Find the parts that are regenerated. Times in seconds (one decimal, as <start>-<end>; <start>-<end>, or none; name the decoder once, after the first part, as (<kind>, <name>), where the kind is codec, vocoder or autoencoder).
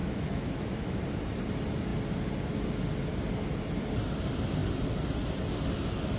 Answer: 0.0-1.0 (autoencoder, DAC-VAE)